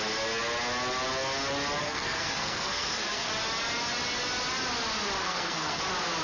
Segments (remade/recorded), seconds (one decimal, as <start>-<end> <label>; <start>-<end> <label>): 0.0-1.8 recorded; 1.8-3.3 remade; 3.3-5.2 recorded; 5.2-5.8 remade; 5.8-6.2 recorded